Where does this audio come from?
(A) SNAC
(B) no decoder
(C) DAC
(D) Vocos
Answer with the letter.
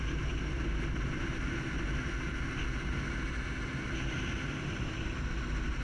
B